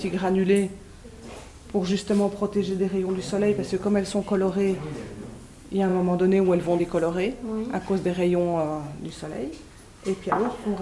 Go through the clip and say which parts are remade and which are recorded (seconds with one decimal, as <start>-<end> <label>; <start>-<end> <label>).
0.0-10.8 recorded